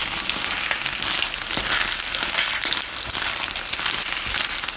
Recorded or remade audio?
recorded